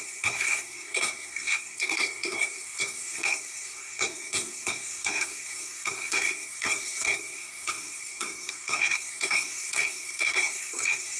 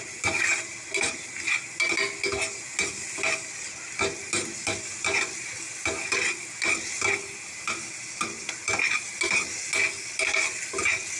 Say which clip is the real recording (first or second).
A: second